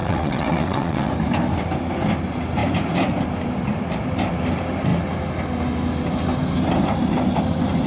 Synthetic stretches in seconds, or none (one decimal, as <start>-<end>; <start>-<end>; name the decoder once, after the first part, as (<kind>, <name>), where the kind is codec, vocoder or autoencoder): 0.0-1.1 (vocoder, WaveNeXt)